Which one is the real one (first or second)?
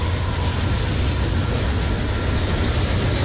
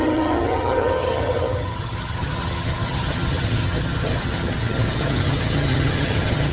first